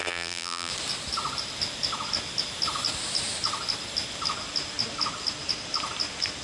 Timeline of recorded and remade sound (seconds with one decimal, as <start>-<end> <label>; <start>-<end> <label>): 0.0-0.7 remade; 0.7-6.4 recorded